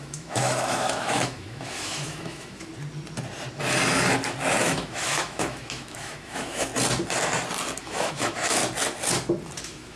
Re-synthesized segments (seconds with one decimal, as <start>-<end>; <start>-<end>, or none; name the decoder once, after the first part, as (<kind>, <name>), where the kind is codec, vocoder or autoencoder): 0.0-2.7 (autoencoder, DAC-VAE); 4.6-6.7; 7.8-8.6; 9.6-10.0